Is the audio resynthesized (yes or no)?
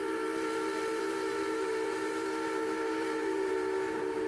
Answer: yes